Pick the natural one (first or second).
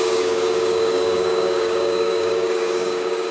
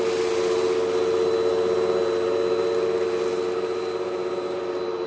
second